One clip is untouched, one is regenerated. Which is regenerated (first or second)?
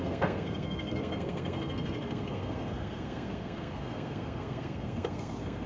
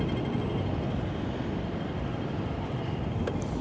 first